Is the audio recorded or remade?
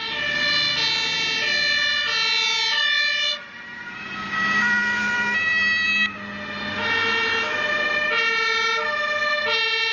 recorded